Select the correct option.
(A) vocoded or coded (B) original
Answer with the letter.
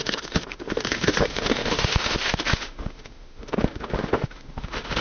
A